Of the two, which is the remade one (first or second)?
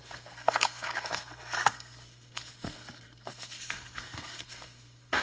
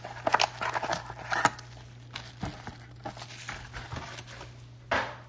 first